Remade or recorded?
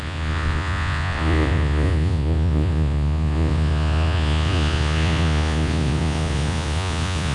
remade